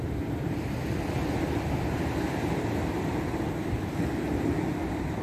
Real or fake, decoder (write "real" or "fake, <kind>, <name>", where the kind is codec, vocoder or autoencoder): real